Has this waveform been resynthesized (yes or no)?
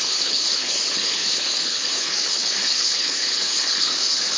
yes